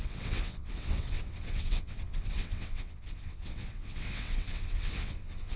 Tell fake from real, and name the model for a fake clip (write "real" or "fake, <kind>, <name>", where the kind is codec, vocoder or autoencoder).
fake, vocoder, WaveNeXt